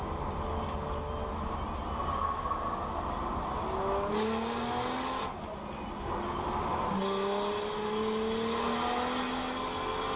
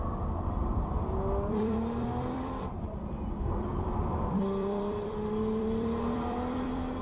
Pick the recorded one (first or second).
first